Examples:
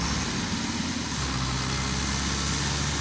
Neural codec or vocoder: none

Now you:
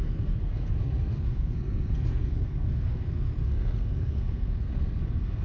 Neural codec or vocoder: codec, SNAC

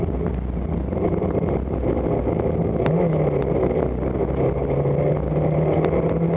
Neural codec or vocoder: none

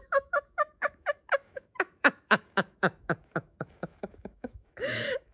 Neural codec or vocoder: autoencoder, DAC-VAE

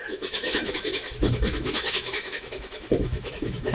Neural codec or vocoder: autoencoder, DAC-VAE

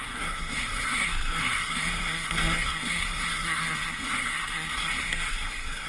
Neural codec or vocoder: codec, SNAC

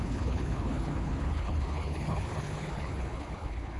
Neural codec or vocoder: codec, HILCodec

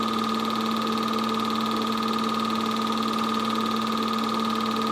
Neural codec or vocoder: none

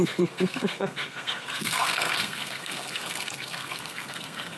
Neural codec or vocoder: codec, SNAC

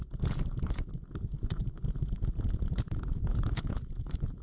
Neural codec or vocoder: vocoder, Vocos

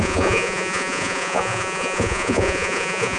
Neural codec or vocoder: vocoder, Vocos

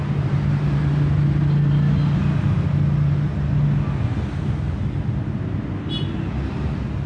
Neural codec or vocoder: none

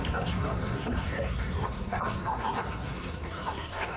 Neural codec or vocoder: codec, SNAC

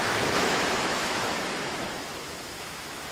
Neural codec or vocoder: autoencoder, DAC-VAE